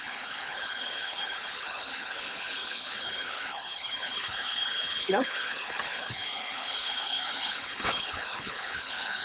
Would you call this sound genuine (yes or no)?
no